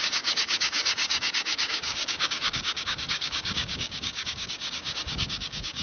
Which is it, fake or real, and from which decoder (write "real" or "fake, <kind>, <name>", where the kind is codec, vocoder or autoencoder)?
fake, codec, DAC